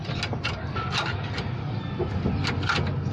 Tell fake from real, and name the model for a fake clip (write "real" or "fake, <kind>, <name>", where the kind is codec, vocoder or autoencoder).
real